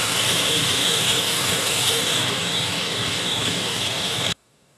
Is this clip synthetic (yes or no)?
yes